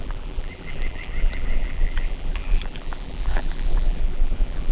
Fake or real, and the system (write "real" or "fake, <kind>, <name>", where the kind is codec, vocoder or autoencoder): fake, vocoder, BigVGAN v2